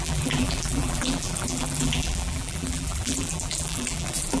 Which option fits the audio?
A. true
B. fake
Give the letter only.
B